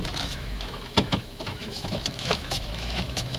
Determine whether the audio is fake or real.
fake